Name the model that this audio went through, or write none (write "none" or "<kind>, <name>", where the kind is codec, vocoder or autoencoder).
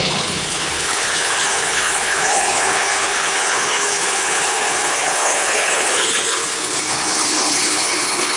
codec, HILCodec